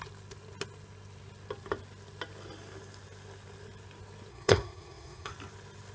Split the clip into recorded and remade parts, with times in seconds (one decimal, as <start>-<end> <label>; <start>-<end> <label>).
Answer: 0.0-4.3 recorded; 4.3-5.3 remade; 5.3-5.9 recorded